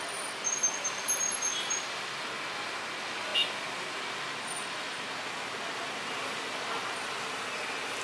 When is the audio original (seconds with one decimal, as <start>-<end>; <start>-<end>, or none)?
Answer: 0.0-8.0